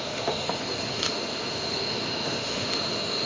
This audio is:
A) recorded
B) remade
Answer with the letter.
B